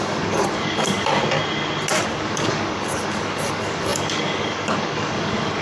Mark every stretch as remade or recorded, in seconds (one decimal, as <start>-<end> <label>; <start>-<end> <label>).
0.0-1.2 remade; 1.2-2.0 recorded; 2.0-5.6 remade